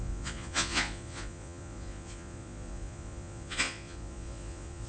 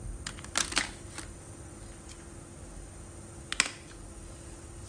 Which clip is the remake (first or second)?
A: first